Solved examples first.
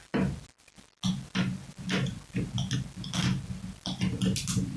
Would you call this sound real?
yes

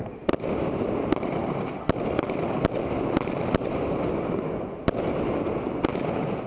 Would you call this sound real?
yes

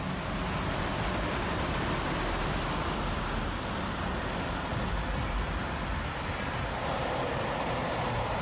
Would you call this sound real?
yes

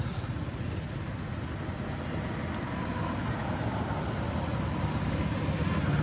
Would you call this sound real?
yes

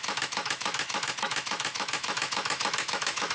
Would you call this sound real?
no